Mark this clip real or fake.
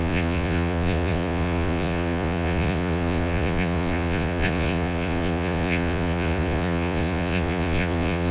fake